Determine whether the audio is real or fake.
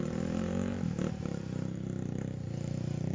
fake